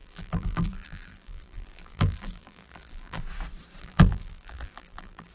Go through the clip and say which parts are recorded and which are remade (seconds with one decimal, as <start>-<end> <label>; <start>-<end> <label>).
0.0-3.2 remade; 3.2-3.8 recorded; 3.8-5.3 remade